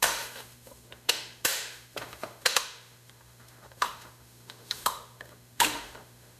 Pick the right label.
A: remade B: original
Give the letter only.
A